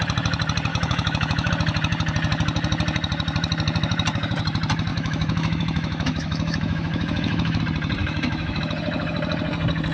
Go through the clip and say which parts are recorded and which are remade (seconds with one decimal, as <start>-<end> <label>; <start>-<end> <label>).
0.0-0.7 recorded; 0.7-1.5 remade; 1.5-4.9 recorded; 4.9-7.6 remade; 7.6-8.0 recorded; 8.0-8.6 remade; 8.6-9.9 recorded